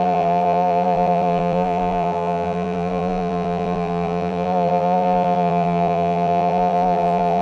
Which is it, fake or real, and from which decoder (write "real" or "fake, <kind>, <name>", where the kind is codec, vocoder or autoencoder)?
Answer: fake, vocoder, BigVGAN v2